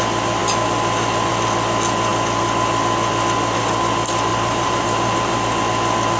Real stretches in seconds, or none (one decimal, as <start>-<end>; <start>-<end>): 0.0-4.3; 5.6-6.2